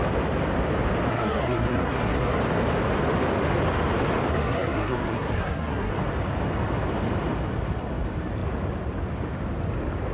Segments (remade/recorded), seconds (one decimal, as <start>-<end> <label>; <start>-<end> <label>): 0.0-1.1 recorded; 1.1-2.4 remade; 2.4-4.3 recorded; 4.3-5.9 remade; 5.9-10.1 recorded